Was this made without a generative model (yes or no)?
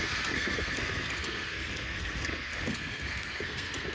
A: no